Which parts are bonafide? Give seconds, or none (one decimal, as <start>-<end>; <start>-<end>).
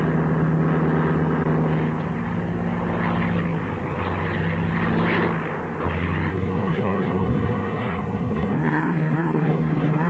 0.0-6.3